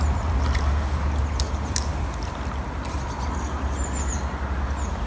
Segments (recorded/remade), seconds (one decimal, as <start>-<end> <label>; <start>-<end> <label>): 0.0-5.1 recorded